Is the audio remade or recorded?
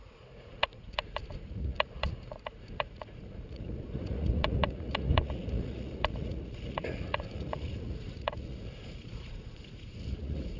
remade